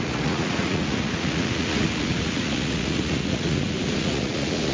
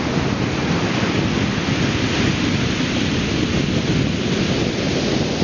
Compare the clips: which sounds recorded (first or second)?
second